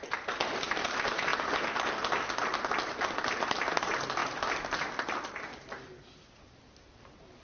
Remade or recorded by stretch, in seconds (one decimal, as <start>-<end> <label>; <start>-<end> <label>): 0.0-1.3 remade; 1.3-3.2 recorded; 3.2-4.2 remade; 4.2-6.6 recorded; 6.6-7.4 remade